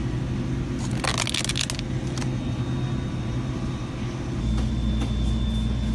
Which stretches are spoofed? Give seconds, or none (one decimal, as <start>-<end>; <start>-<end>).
none